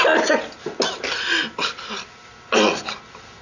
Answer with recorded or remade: recorded